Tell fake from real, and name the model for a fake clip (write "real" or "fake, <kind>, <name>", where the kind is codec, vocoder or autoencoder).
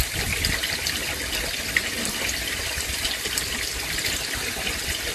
real